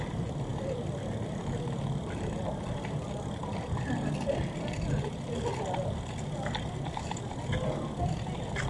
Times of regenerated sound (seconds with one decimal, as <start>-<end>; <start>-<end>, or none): none